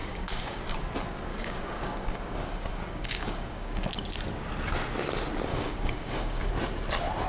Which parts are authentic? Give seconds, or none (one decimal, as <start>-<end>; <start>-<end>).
0.6-1.3; 3.9-5.5; 6.5-7.3